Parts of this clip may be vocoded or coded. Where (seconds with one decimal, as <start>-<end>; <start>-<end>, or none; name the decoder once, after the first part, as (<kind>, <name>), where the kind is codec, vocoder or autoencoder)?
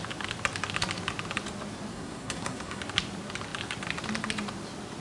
1.9-2.8 (codec, SNAC)